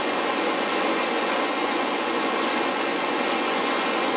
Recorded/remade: remade